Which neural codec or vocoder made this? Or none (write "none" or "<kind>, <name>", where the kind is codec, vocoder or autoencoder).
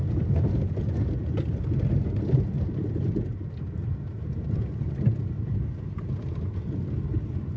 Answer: none